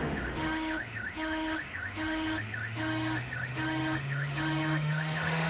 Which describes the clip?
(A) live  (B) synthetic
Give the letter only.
B